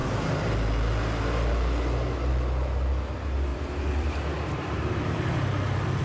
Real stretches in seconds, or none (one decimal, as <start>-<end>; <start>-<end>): 0.0-3.5; 5.1-6.0